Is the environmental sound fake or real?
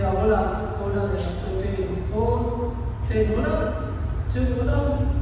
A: real